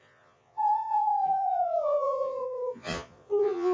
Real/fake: fake